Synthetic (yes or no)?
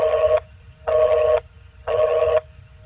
yes